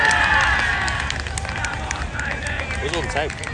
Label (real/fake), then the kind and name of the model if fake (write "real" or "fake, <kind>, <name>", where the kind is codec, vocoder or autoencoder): real